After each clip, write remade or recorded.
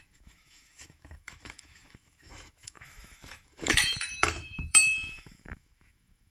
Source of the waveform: remade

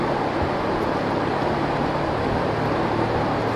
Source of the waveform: recorded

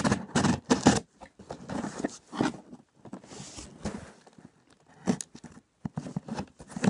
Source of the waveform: recorded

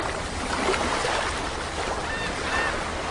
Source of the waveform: recorded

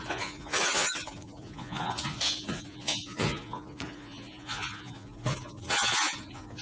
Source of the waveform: remade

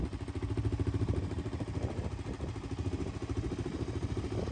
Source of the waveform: recorded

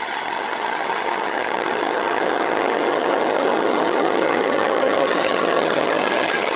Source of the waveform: remade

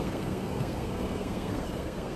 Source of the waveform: remade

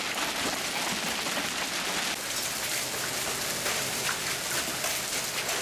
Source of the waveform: recorded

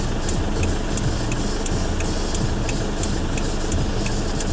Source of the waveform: recorded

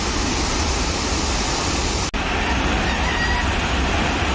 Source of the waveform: recorded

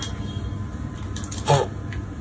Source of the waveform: recorded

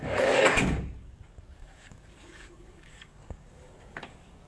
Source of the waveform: remade